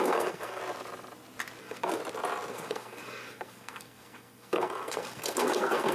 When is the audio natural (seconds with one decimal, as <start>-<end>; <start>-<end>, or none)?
0.6-1.6; 2.0-2.5